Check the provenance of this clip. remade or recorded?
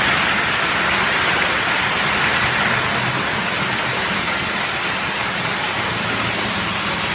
recorded